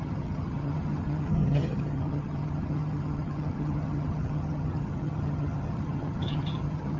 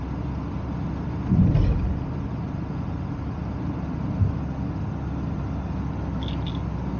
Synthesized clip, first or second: first